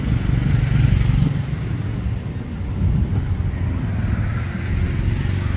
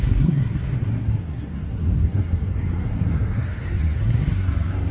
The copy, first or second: second